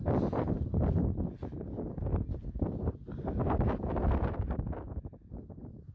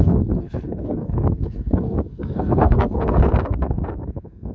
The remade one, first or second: second